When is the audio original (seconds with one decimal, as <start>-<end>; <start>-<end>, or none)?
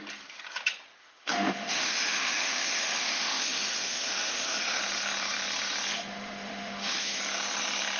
0.0-1.0; 4.8-5.9; 7.2-8.0